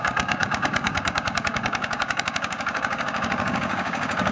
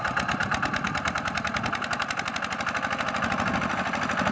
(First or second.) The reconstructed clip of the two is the first